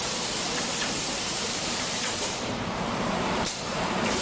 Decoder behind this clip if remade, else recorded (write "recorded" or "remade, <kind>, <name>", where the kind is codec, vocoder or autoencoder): remade, vocoder, BigVGAN v2